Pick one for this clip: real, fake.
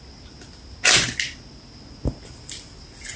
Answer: real